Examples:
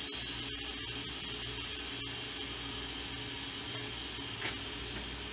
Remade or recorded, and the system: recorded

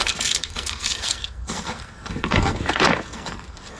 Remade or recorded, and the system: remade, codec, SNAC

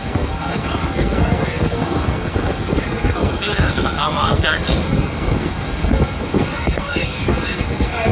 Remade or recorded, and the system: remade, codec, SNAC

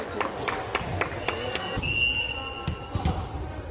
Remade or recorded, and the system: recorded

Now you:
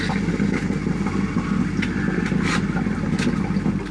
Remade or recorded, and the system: recorded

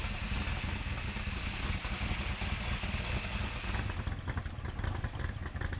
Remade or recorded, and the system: recorded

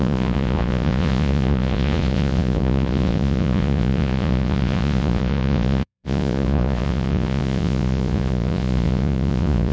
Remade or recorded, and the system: remade, vocoder, Vocos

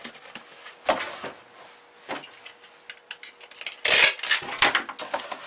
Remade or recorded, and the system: recorded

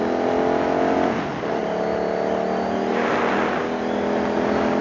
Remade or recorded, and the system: recorded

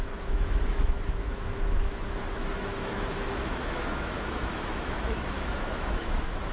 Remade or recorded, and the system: remade, autoencoder, DAC-VAE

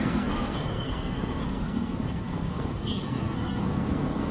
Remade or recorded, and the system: remade, codec, SNAC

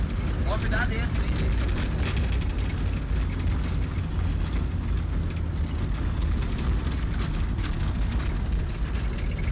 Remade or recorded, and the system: recorded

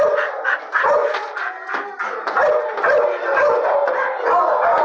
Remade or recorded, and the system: recorded